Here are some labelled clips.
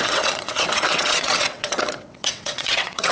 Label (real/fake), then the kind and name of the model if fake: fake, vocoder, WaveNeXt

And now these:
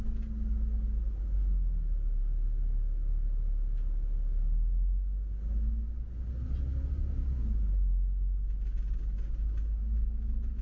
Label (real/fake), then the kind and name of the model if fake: real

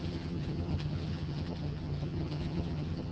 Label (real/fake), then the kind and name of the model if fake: fake, vocoder, HiFi-GAN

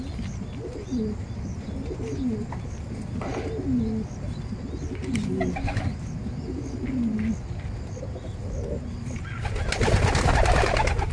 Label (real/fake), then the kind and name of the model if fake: real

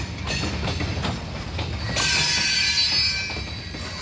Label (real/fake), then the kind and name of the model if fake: real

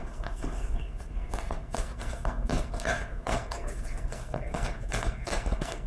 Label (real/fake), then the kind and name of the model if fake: fake, codec, SNAC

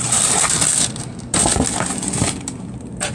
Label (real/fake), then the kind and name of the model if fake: real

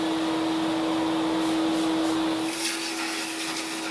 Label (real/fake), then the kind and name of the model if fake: real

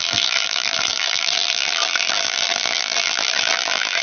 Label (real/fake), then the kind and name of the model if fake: fake, vocoder, BigVGAN v2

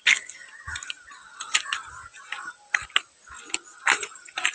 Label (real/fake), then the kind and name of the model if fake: real